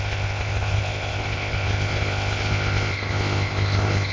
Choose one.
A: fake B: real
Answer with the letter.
A